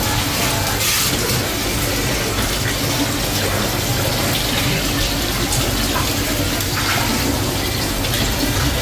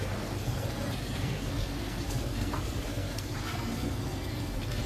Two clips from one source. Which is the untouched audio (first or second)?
first